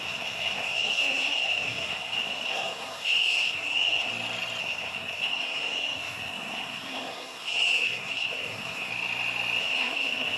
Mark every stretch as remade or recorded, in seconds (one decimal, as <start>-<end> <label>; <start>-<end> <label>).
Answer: 0.0-4.1 remade; 4.1-4.6 recorded; 4.6-8.9 remade; 8.9-9.6 recorded; 9.6-10.4 remade